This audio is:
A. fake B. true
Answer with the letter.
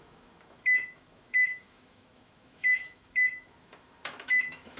A